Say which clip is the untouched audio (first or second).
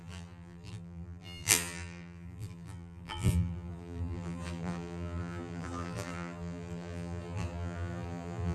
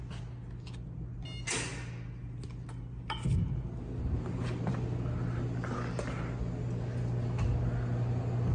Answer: second